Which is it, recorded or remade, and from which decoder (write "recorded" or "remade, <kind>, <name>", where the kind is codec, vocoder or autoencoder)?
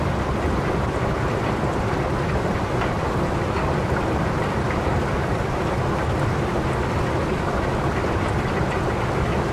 recorded